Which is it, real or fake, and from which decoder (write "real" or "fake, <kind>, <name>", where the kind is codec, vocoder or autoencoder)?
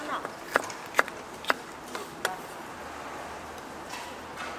real